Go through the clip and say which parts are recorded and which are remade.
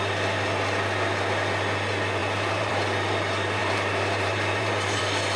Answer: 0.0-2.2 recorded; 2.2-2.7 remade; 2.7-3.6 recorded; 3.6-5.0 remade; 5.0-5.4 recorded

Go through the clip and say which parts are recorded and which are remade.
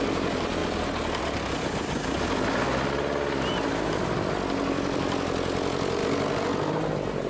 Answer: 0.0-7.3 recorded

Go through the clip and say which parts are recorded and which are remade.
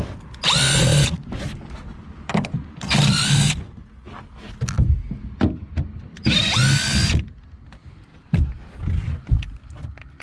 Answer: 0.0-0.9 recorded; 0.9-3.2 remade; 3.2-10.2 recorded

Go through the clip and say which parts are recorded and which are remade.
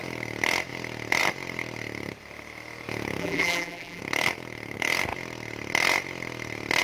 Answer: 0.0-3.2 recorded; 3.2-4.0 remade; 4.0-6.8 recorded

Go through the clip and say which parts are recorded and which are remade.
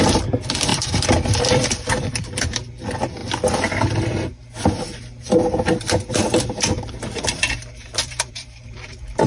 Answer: 0.0-9.3 remade